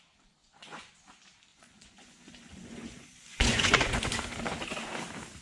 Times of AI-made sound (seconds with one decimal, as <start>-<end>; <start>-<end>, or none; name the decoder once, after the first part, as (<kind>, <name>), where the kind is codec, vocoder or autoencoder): 0.4-0.9 (vocoder, Vocos); 1.5-4.1